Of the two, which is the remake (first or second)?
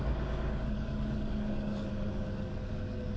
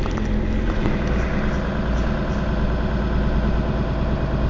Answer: first